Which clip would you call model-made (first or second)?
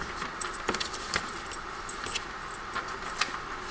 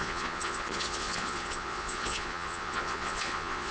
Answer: second